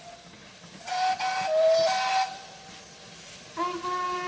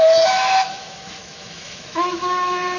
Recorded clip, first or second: first